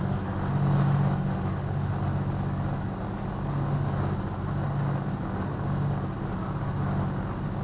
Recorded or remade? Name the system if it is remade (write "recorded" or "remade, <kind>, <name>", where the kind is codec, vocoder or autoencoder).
recorded